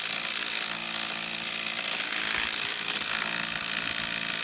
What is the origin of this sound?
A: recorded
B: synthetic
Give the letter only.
A